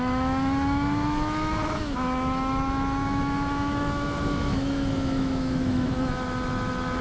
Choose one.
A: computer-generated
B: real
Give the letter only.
A